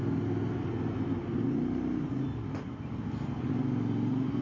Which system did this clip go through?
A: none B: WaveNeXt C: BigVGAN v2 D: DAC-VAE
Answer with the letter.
A